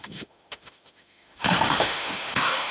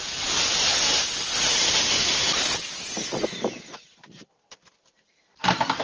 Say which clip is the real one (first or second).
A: second